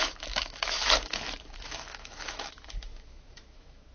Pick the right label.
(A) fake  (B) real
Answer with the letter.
A